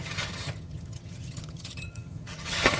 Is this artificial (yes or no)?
yes